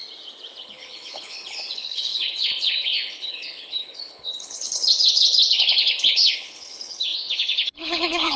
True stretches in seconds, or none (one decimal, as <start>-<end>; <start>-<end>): 0.0-0.6